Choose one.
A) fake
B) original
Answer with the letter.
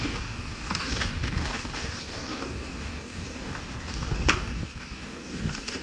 A